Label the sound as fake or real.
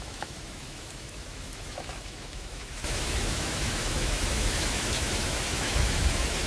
fake